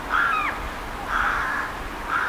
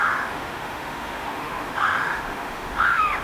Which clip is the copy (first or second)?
second